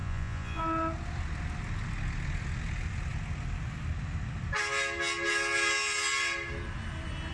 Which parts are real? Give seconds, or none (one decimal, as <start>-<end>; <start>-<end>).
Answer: 0.6-7.3